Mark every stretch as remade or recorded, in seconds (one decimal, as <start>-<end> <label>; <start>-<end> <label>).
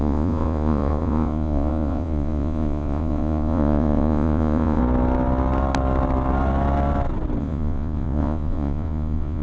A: 0.0-4.8 remade; 4.8-7.4 recorded; 7.4-9.4 remade